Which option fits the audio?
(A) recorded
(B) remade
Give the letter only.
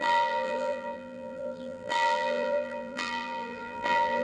B